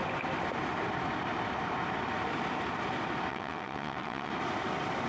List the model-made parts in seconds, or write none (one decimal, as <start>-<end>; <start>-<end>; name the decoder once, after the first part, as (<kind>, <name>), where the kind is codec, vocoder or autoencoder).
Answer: 3.3-4.3 (vocoder, WaveNeXt)